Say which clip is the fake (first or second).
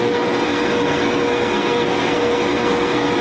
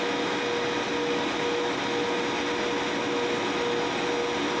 first